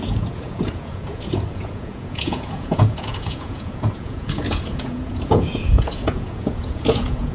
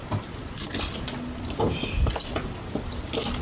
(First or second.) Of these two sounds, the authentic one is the second